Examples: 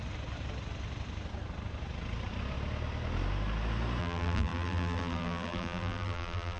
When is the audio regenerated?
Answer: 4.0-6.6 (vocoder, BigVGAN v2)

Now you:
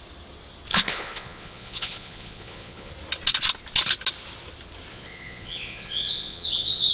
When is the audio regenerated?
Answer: 0.7-2.9 (vocoder, Vocos); 4.9-6.9

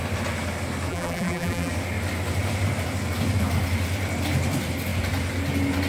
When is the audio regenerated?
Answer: 0.9-1.7 (vocoder, BigVGAN v2)

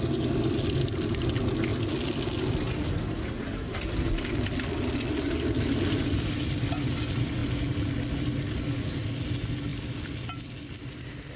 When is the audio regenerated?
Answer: none

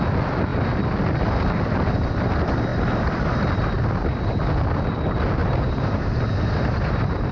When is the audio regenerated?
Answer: 5.4-7.3 (vocoder, BigVGAN v2)

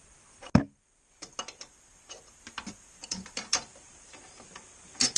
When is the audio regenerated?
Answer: 0.0-0.4 (vocoder, BigVGAN v2); 3.1-5.2

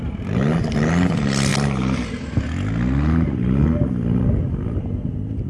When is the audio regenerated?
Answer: none